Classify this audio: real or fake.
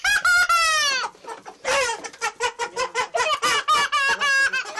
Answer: real